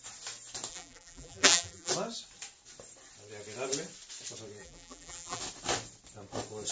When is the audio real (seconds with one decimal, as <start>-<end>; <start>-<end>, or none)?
0.0-0.7; 1.9-4.6; 5.4-6.7